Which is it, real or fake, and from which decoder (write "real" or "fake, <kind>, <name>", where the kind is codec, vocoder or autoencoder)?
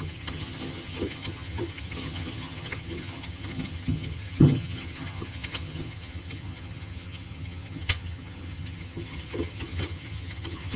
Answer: fake, vocoder, HiFi-GAN